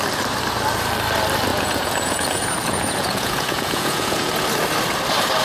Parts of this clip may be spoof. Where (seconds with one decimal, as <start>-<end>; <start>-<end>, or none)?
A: 1.5-4.3